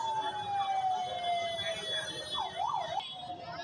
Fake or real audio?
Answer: real